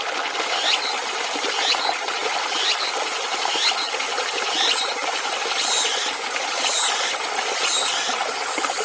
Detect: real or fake real